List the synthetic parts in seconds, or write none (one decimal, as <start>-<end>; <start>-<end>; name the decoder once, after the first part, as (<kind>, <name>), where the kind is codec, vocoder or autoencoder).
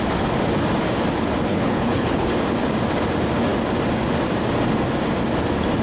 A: 1.5-2.3 (codec, HILCodec)